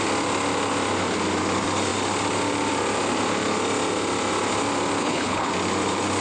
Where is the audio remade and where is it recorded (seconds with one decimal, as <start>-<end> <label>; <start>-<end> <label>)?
0.0-5.0 recorded; 5.0-5.5 remade; 5.5-6.2 recorded